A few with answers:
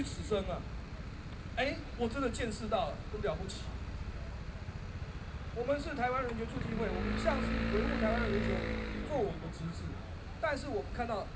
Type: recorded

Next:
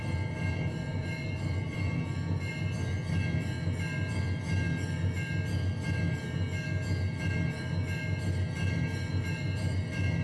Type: recorded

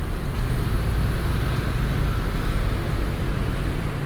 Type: recorded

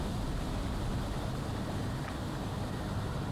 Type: recorded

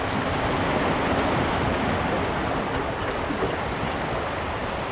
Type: recorded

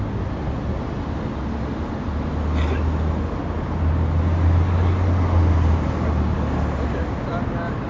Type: recorded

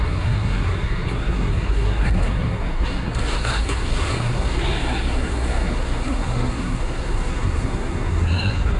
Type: remade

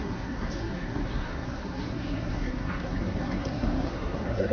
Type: remade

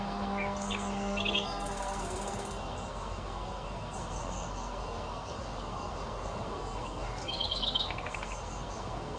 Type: remade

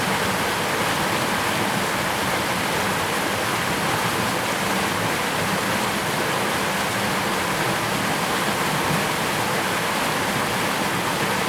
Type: recorded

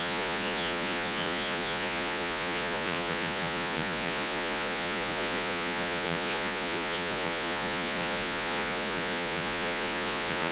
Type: remade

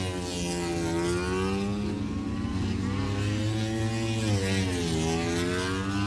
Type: recorded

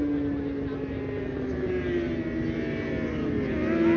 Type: recorded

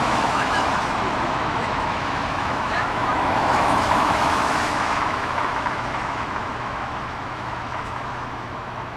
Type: remade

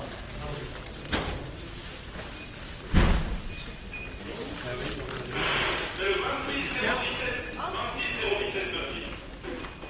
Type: recorded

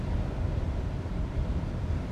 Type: recorded